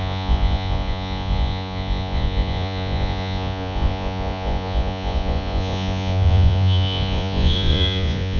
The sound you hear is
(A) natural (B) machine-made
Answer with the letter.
B